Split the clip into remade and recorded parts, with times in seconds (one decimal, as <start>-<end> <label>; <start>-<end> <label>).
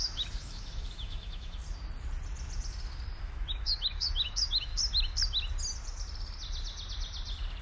0.0-1.6 remade; 1.6-3.2 recorded; 3.2-4.7 remade; 4.7-7.6 recorded